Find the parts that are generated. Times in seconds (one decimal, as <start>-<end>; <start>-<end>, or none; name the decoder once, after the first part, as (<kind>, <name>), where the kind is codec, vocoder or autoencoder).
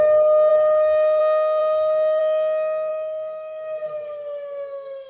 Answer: 0.5-1.2 (codec, DAC); 1.6-2.2; 2.9-5.1